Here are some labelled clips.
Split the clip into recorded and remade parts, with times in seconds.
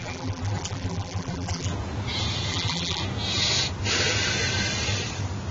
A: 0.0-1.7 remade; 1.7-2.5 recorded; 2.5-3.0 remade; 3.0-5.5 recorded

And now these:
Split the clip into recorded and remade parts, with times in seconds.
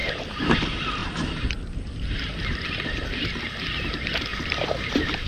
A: 0.0-0.6 remade; 0.6-1.0 recorded; 1.0-3.4 remade; 3.4-4.3 recorded; 4.3-5.3 remade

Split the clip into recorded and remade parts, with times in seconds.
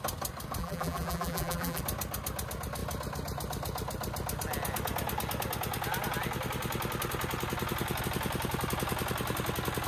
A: 0.0-0.6 recorded; 0.6-1.8 remade; 1.8-9.9 recorded